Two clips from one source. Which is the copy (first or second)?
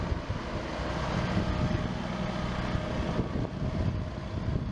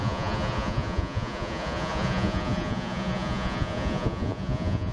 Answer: second